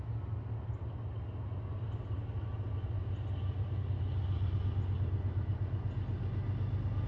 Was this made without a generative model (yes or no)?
yes